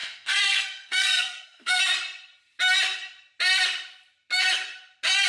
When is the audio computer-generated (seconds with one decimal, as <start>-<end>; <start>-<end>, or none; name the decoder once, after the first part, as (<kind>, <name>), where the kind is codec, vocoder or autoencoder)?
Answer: 0.0-1.8 (codec, SNAC)